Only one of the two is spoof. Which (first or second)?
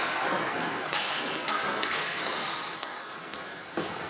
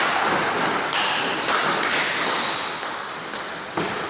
first